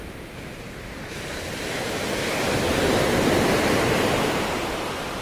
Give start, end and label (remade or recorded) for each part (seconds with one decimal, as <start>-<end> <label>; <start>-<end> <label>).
0.0-2.7 recorded; 2.7-4.6 remade; 4.6-5.2 recorded